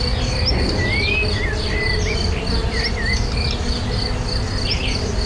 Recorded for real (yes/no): yes